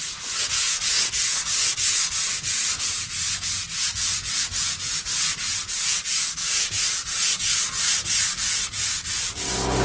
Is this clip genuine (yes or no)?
no